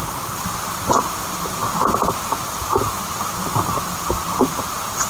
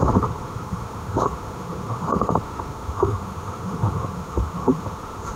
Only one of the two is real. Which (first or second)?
first